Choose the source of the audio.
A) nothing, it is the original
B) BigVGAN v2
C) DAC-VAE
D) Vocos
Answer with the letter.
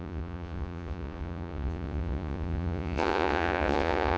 D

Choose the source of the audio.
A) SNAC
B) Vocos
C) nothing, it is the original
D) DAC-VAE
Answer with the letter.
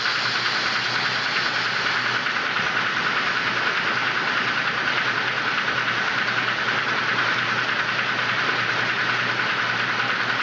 C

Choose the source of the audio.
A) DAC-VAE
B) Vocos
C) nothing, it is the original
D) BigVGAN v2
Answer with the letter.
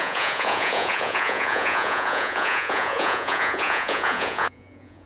B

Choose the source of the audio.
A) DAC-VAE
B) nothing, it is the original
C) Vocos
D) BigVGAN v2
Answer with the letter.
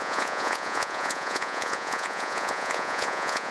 C